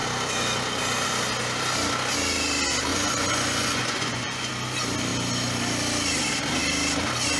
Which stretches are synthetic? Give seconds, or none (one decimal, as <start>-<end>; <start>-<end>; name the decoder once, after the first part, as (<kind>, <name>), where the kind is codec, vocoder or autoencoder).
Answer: 2.9-4.5 (vocoder, Vocos)

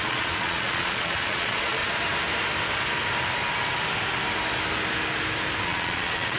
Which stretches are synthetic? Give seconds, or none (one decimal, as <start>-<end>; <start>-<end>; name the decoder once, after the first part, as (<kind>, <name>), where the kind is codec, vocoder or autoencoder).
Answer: 0.0-1.8 (vocoder, Vocos); 5.6-6.4